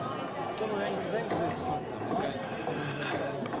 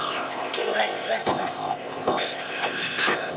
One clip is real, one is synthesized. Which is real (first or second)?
first